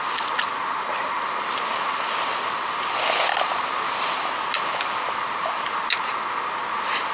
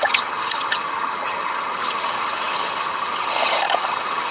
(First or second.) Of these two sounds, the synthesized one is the second